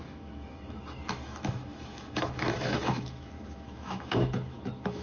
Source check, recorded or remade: remade